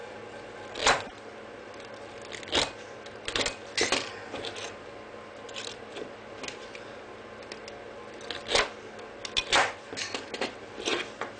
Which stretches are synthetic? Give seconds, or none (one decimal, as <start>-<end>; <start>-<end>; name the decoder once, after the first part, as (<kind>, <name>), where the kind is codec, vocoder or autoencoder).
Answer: none